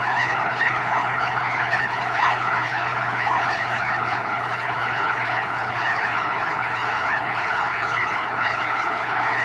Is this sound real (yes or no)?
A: no